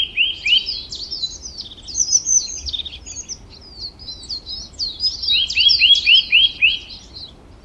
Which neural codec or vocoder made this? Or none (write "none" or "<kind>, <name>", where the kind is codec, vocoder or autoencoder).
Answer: none